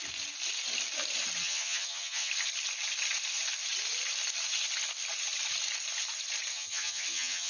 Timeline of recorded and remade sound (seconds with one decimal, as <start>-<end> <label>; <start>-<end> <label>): 0.0-1.4 recorded; 1.4-2.3 remade; 2.3-6.5 recorded; 6.5-7.5 remade